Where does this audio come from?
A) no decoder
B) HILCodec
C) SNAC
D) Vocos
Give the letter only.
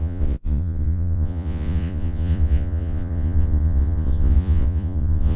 D